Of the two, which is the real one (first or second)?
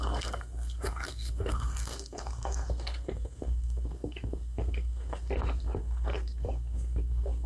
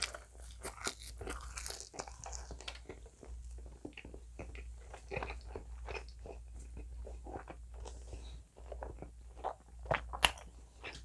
second